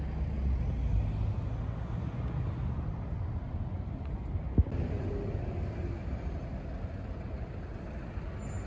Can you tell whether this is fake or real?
real